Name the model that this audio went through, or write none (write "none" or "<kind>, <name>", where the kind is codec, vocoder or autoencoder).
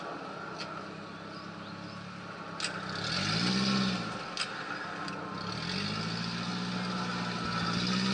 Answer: none